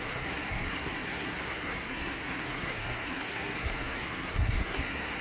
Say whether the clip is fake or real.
fake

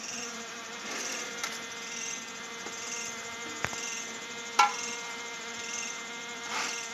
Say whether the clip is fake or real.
real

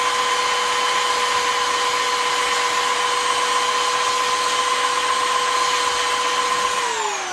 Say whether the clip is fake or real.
real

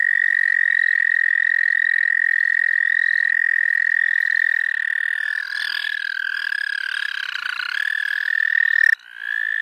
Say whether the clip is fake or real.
real